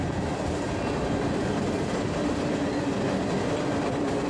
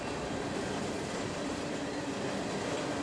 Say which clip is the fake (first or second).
second